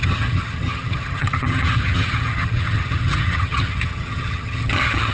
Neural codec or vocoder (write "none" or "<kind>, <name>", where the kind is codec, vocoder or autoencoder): vocoder, HiFi-GAN